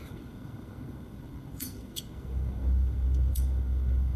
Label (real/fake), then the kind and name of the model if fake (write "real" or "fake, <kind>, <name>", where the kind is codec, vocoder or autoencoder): fake, codec, SNAC